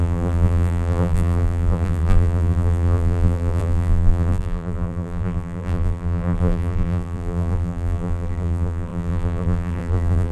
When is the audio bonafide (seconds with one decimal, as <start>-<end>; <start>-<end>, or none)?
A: none